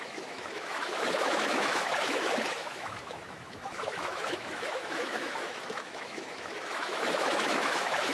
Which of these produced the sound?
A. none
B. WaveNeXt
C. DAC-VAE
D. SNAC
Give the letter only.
C